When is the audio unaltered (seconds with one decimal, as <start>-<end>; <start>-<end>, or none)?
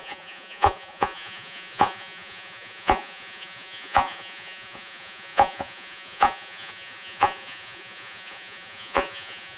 none